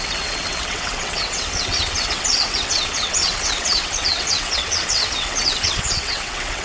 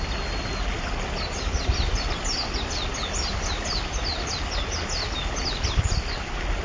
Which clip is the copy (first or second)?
first